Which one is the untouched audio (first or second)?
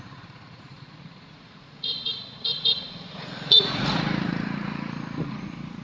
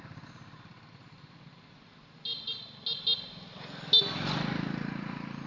second